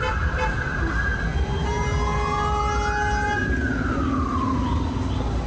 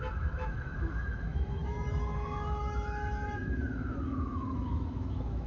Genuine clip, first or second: first